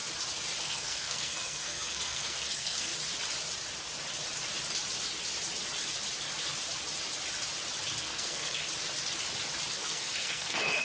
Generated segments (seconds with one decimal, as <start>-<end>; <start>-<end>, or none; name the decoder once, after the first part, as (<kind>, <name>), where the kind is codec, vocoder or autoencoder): 0.6-2.9 (codec, SNAC); 8.0-8.6; 9.7-10.8